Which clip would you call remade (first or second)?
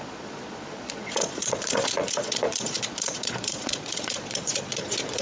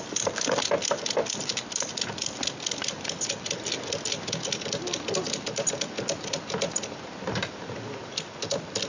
first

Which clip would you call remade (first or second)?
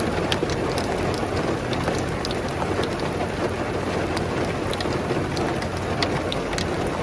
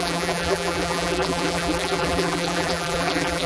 second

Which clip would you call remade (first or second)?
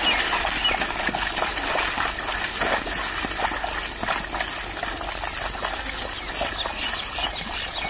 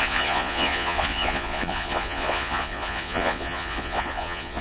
second